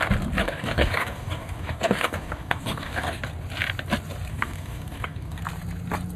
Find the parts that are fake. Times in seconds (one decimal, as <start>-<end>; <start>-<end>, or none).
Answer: 0.4-3.2; 4.3-5.4